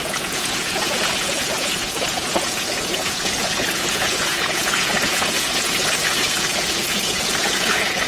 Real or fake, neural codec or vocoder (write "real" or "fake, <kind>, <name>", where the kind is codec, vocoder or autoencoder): fake, vocoder, Vocos